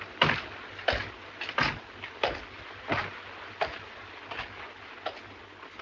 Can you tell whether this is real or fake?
real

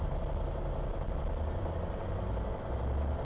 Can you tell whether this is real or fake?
real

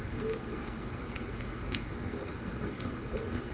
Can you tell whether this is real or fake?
fake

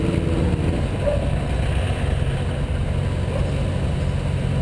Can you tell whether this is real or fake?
real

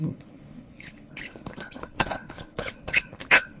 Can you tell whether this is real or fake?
fake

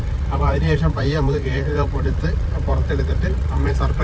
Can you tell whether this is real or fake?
fake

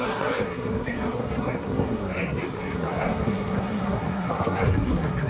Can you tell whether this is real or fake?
fake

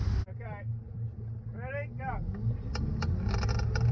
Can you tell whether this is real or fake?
real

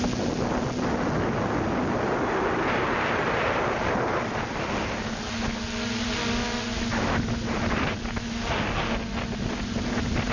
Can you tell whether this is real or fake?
real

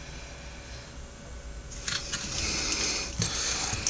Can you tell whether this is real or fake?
real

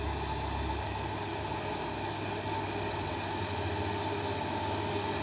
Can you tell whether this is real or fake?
real